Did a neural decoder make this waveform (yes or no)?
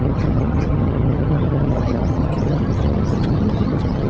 yes